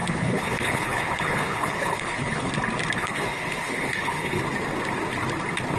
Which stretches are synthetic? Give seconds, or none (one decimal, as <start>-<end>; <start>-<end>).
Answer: 0.0-2.5; 3.0-4.4